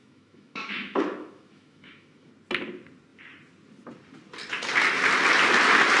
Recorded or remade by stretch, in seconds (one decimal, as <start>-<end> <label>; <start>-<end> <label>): 0.0-2.3 remade; 2.3-6.0 recorded